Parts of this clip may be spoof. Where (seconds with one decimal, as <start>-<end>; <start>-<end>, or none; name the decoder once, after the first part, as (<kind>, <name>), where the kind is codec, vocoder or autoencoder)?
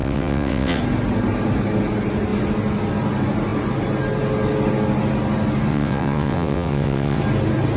0.0-0.8 (vocoder, WaveNeXt); 5.7-7.2